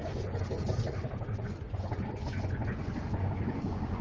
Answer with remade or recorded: remade